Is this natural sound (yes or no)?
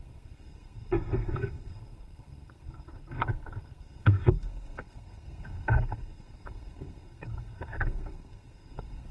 no